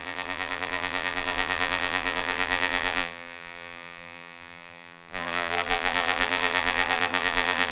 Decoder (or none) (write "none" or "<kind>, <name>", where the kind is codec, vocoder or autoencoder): vocoder, BigVGAN v2